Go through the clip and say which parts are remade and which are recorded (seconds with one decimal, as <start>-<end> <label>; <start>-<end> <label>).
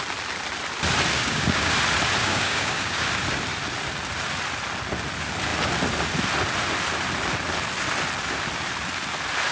0.0-1.1 recorded; 1.1-1.7 remade; 1.7-2.2 recorded; 2.2-3.1 remade; 3.1-9.5 recorded